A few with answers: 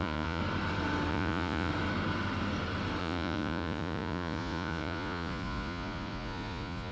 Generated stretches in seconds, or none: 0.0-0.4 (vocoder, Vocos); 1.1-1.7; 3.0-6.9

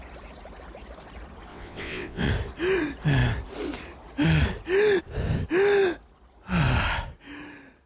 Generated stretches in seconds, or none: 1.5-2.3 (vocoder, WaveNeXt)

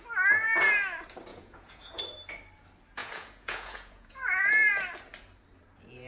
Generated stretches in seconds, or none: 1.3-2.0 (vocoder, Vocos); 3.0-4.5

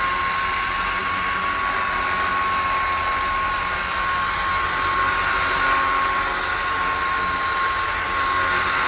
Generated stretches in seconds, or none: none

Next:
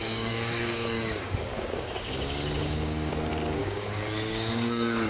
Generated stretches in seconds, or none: 0.0-3.1 (codec, DAC); 3.6-5.1